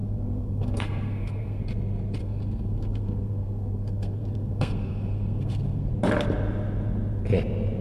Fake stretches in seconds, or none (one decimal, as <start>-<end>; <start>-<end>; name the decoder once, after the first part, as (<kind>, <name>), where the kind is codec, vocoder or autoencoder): 0.0-1.6 (codec, SNAC); 2.2-5.9